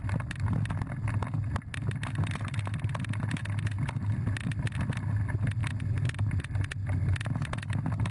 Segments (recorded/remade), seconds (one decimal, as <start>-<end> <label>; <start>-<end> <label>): 0.0-8.1 recorded